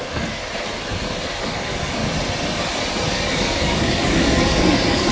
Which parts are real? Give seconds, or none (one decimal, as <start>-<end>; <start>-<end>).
0.4-1.4; 2.0-3.1